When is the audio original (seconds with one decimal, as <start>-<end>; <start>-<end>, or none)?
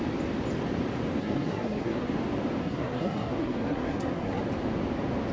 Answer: 0.0-1.2; 2.1-2.6; 4.4-5.3